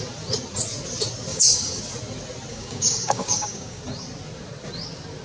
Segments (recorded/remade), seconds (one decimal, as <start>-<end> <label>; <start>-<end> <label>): 0.0-1.3 recorded; 1.3-1.8 remade; 1.8-2.5 recorded; 2.5-3.8 remade; 3.8-5.2 recorded

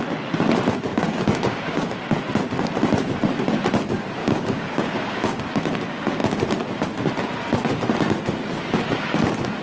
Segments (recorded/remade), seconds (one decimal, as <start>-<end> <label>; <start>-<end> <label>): 0.0-0.9 recorded; 0.9-1.9 remade; 1.9-4.2 recorded; 4.2-5.4 remade; 5.4-9.6 recorded

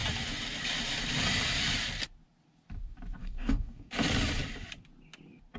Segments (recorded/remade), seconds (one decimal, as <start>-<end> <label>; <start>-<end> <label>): 0.0-3.2 recorded; 3.2-3.9 remade; 3.9-5.6 recorded

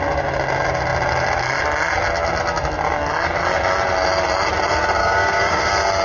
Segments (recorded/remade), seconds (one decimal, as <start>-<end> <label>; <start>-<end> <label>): 0.0-5.0 recorded; 5.0-5.6 remade; 5.6-6.0 recorded

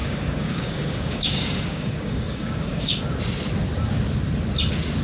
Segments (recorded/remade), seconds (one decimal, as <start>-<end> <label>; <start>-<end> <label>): 0.0-3.0 remade; 3.0-5.0 recorded

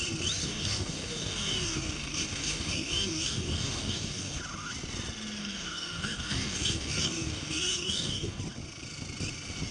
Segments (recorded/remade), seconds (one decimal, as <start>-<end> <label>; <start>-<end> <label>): 0.0-0.4 recorded; 0.4-4.4 remade; 4.4-5.4 recorded; 5.4-8.4 remade; 8.4-9.7 recorded

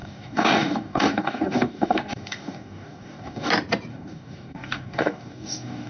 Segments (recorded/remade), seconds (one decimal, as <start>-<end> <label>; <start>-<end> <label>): 0.0-3.5 remade; 3.5-3.9 recorded; 3.9-5.9 remade